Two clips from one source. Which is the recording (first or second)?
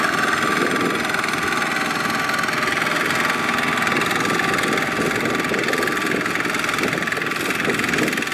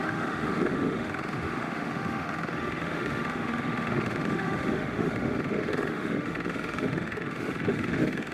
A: first